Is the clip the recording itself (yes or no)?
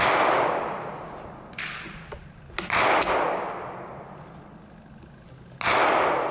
yes